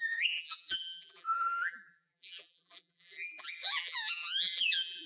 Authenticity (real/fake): fake